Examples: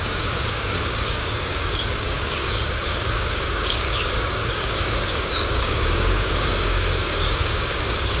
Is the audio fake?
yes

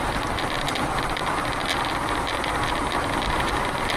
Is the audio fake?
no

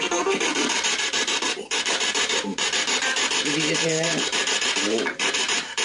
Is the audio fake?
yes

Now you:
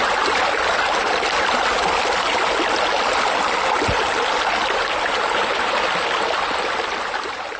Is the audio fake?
no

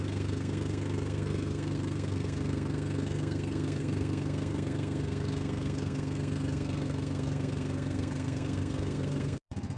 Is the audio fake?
yes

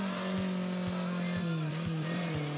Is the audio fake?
no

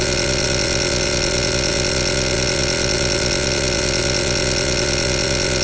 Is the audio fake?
yes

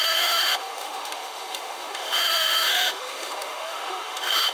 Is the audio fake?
yes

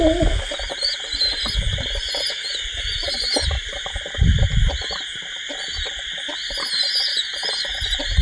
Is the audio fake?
no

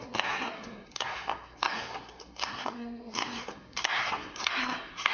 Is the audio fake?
yes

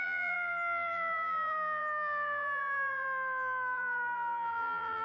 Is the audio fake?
yes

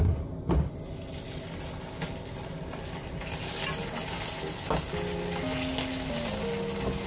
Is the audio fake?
no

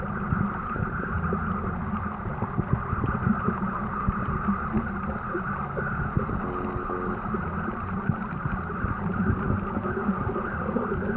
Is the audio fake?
no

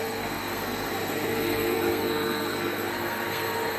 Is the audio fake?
yes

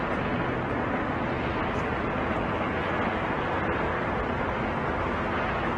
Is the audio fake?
no